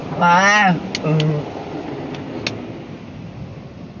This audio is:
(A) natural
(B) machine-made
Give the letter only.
A